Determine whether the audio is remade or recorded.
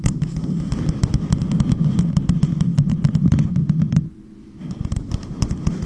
recorded